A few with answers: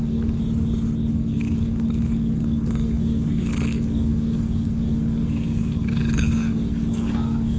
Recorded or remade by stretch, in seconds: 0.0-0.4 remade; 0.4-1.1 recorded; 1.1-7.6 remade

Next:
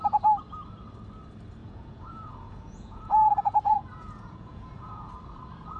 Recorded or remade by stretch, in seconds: 0.0-1.6 recorded; 1.6-5.1 remade; 5.1-5.8 recorded